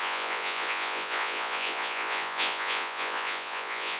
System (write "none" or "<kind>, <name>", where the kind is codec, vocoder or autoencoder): vocoder, Vocos